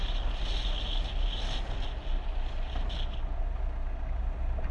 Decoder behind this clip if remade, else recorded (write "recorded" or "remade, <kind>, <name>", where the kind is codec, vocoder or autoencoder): recorded